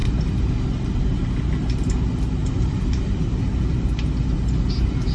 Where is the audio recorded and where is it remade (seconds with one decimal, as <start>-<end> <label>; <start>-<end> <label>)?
0.0-2.4 recorded; 2.4-3.5 remade; 3.5-5.1 recorded